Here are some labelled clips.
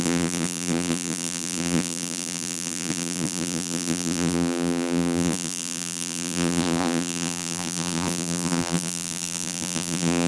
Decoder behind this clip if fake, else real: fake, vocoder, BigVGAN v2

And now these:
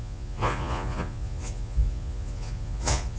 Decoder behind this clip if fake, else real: fake, vocoder, Vocos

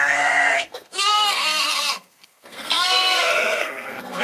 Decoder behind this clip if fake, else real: fake, codec, SNAC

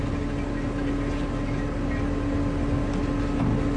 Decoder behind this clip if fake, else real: real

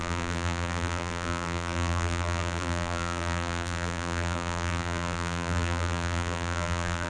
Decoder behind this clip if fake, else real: fake, vocoder, BigVGAN v2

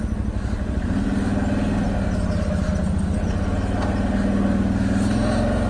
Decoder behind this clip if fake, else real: real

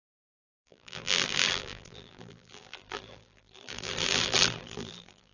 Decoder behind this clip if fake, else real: fake, vocoder, BigVGAN v2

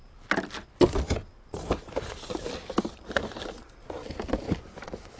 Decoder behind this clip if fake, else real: real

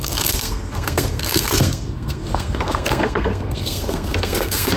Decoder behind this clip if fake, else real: fake, codec, SNAC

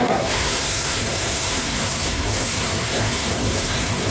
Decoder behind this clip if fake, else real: fake, codec, SNAC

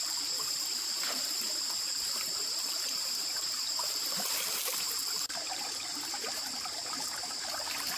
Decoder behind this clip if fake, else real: fake, vocoder, BigVGAN v2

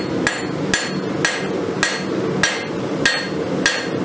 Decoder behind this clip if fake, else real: real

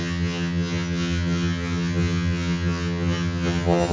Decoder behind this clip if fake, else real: fake, vocoder, HiFi-GAN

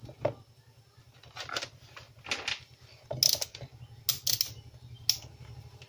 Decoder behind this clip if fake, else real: real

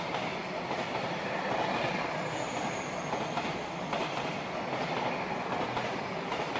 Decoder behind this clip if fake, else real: real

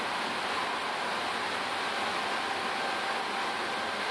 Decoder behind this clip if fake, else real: real